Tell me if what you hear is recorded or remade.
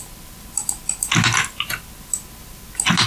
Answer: recorded